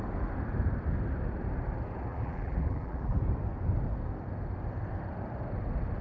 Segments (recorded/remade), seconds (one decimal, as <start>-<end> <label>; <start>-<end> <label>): 0.0-2.1 recorded; 2.1-3.2 remade; 3.2-6.0 recorded